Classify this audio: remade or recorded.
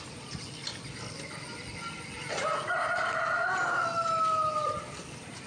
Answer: recorded